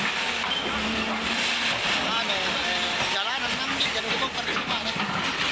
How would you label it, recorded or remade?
recorded